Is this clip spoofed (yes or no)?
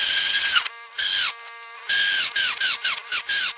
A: no